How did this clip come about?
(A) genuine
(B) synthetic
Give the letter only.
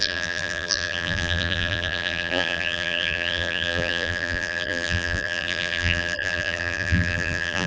B